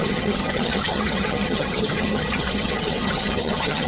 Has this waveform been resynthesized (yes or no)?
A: yes